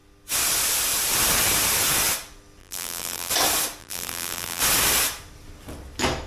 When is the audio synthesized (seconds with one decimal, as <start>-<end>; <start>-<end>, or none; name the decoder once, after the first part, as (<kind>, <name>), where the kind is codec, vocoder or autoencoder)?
2.6-3.3 (vocoder, BigVGAN v2); 3.8-4.6